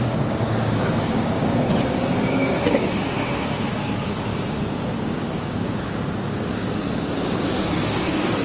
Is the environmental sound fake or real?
fake